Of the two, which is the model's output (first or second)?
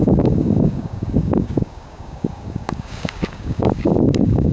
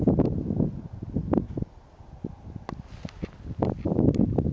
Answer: first